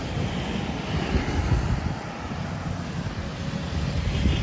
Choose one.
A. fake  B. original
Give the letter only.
B